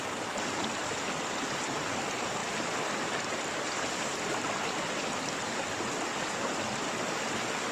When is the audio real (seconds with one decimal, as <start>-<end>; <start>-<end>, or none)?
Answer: 0.0-2.4; 6.9-7.7